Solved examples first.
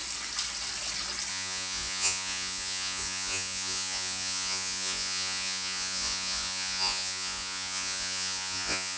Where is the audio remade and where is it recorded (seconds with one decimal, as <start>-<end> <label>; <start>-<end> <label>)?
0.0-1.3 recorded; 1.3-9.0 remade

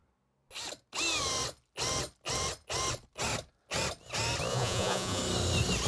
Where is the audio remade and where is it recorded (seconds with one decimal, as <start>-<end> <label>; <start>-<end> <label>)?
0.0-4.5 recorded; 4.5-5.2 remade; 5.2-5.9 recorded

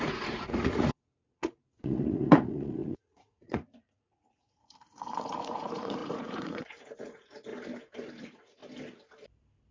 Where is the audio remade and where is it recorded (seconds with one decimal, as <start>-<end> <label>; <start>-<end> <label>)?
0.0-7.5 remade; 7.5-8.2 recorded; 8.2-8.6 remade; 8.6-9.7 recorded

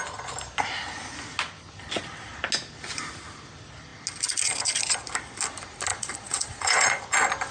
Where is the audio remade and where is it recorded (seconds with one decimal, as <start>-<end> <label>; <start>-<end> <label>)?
0.0-5.9 recorded; 5.9-7.0 remade; 7.0-7.5 recorded